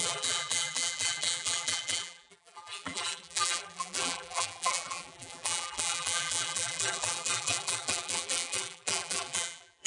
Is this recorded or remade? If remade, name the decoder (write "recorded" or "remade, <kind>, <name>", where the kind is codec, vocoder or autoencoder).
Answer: remade, vocoder, BigVGAN v2